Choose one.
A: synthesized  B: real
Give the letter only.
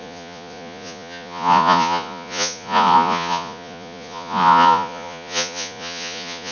A